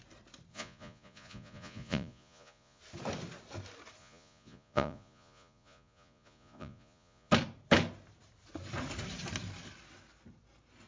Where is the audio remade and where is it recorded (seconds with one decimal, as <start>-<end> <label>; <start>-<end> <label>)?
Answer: 0.0-0.5 recorded; 0.5-2.8 remade; 2.8-4.0 recorded; 4.0-7.3 remade; 7.3-10.9 recorded